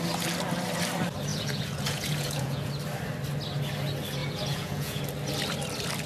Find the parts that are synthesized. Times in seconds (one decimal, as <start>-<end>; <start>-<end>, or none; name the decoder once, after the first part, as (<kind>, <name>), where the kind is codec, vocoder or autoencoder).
1.3-2.7 (vocoder, Vocos); 4.2-5.0